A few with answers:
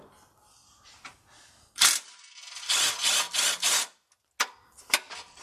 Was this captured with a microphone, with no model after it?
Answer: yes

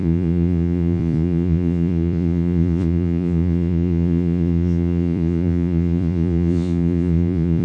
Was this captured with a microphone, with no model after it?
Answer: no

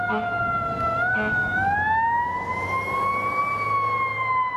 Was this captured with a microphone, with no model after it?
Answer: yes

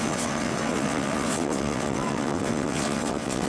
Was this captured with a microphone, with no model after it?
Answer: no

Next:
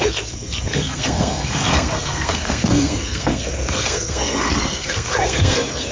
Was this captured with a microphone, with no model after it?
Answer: no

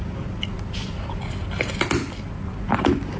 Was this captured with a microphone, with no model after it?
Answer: yes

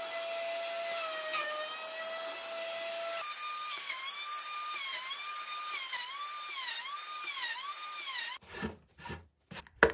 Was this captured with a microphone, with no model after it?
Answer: yes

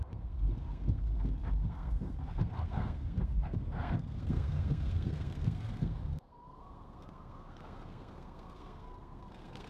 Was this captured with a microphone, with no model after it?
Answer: no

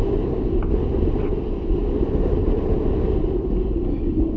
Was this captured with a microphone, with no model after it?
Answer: yes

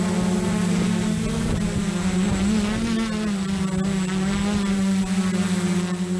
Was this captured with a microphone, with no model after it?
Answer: yes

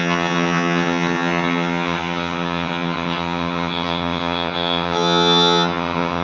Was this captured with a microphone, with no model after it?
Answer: no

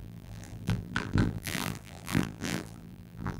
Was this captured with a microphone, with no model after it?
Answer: no